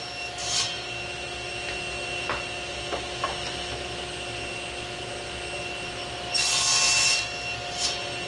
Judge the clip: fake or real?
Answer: real